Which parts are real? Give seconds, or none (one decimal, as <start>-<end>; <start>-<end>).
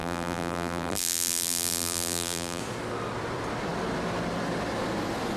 2.6-5.4